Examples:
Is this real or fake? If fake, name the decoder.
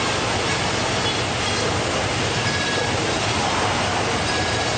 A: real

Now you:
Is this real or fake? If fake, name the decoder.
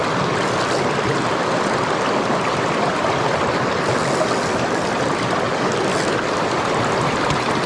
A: real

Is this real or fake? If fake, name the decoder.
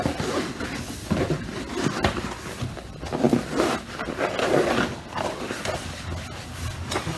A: real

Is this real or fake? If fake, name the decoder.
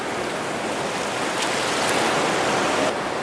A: real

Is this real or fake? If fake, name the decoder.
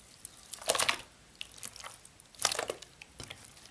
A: real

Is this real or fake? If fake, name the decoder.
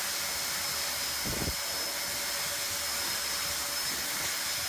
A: real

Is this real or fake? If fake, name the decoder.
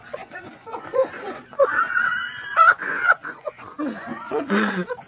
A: fake, vocoder, Vocos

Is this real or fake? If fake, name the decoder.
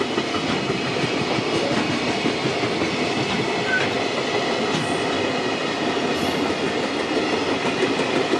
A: real